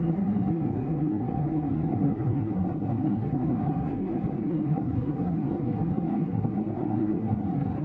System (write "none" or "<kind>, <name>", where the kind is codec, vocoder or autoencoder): codec, SNAC